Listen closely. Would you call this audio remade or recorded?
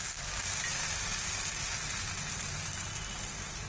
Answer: recorded